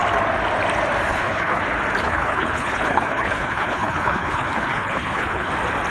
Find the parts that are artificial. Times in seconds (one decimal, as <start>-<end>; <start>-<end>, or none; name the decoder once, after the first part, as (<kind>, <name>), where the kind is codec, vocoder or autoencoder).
1.1-1.6 (codec, HILCodec); 2.0-5.5